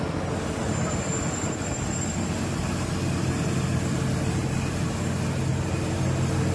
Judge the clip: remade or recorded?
recorded